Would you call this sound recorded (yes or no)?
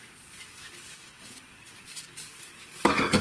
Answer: no